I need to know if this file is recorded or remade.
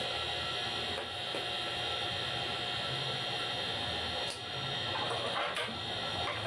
recorded